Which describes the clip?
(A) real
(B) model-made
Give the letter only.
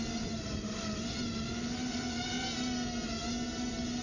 A